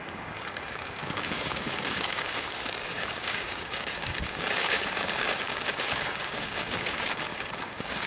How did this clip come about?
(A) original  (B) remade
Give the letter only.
B